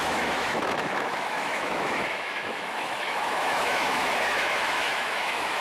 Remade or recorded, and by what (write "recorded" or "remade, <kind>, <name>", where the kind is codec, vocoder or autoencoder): remade, autoencoder, DAC-VAE